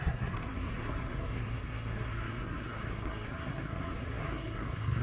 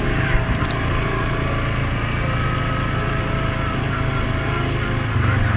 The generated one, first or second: first